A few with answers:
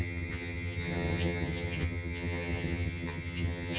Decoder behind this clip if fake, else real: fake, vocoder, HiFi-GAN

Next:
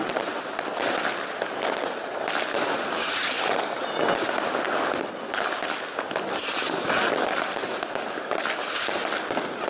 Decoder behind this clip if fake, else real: real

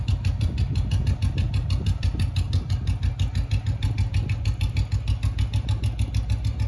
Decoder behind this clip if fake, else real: real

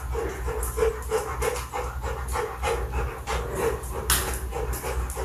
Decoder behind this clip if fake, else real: real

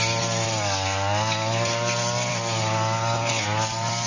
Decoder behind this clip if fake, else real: real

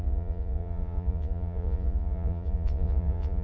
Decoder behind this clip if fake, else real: fake, vocoder, Vocos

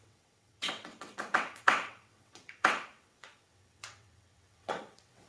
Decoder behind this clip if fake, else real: fake, vocoder, WaveNeXt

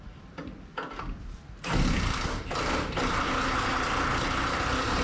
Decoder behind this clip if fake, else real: fake, vocoder, BigVGAN v2